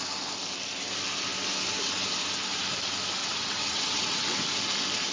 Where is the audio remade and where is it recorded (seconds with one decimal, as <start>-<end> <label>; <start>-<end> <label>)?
0.0-3.2 recorded; 3.2-4.4 remade; 4.4-5.1 recorded